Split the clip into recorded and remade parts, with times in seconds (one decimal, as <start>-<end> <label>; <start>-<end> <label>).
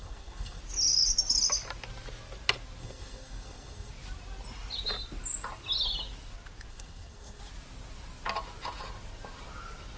0.0-0.6 remade; 0.6-2.8 recorded; 2.8-3.9 remade; 3.9-6.7 recorded; 6.7-7.4 remade; 7.4-10.0 recorded